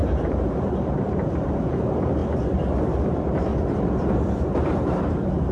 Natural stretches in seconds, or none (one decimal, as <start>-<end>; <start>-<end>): 2.2-3.0; 3.5-4.1